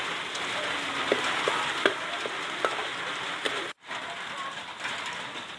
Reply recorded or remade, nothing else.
recorded